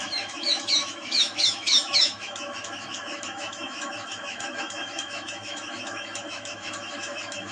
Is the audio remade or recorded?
remade